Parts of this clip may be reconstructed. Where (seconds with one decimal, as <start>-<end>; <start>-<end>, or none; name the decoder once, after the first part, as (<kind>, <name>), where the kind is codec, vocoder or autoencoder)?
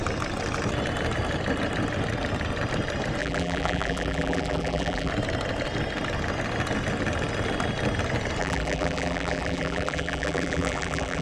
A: 3.2-5.1 (vocoder, BigVGAN v2); 8.4-11.2